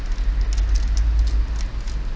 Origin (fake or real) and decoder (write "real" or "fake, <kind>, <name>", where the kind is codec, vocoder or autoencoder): real